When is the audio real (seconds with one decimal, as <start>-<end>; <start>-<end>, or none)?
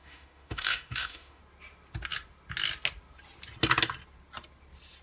1.4-5.0